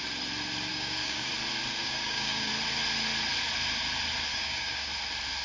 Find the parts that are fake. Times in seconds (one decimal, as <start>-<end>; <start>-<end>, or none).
0.7-1.3; 1.8-2.5; 4.3-4.9